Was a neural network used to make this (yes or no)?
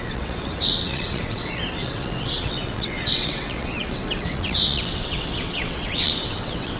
yes